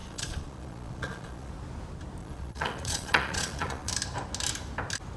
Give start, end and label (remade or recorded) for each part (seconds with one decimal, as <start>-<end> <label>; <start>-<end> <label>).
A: 0.0-1.5 remade; 1.5-2.2 recorded; 2.2-3.9 remade; 3.9-5.2 recorded